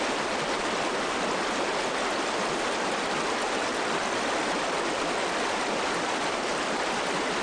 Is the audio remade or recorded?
recorded